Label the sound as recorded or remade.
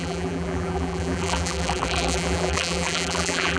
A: remade